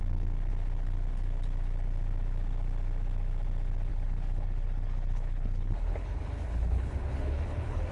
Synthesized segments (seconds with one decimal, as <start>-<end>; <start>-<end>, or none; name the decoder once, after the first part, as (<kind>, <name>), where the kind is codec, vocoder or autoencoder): 3.9-7.9 (codec, HILCodec)